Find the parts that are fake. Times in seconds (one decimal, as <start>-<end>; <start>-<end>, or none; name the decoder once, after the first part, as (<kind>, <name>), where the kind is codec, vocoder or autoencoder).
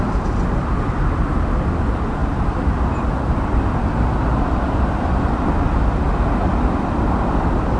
2.2-5.6 (vocoder, BigVGAN v2)